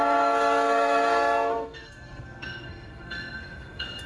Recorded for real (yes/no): no